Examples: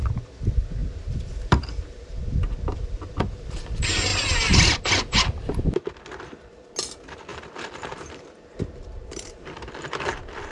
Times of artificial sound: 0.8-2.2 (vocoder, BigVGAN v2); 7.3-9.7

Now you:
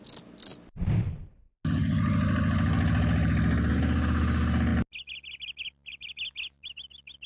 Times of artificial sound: none

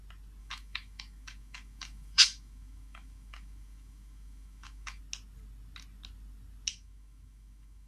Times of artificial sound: 0.4-5.0 (autoencoder, DAC-VAE); 6.7-7.9

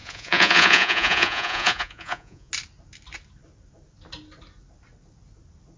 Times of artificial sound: 0.0-2.5 (vocoder, Vocos)

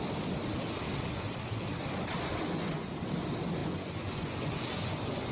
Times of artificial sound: 2.3-2.9 (vocoder, Vocos); 3.6-5.3

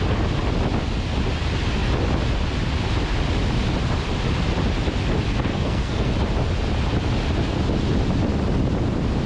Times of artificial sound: 5.5-6.1 (codec, SNAC)

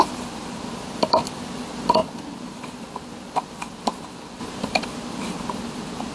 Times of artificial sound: none

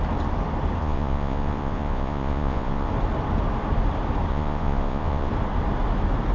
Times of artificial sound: 0.8-2.9 (vocoder, Vocos); 4.3-5.3